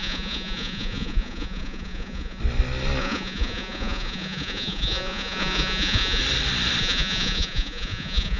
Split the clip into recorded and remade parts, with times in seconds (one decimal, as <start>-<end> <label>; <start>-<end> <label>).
0.0-2.4 remade; 2.4-3.0 recorded; 3.0-6.2 remade; 6.2-6.8 recorded; 6.8-8.4 remade

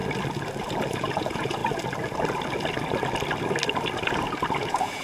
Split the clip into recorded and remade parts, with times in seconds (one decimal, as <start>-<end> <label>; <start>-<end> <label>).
0.0-0.9 recorded; 0.9-1.6 remade; 1.6-4.6 recorded; 4.6-5.0 remade

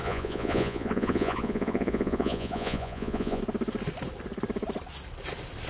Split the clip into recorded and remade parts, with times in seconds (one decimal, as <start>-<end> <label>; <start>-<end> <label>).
0.0-3.4 remade; 3.4-5.7 recorded